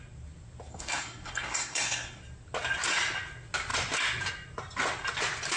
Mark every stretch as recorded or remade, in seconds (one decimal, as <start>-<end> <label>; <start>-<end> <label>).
0.0-0.7 recorded; 0.7-2.2 remade; 2.2-5.6 recorded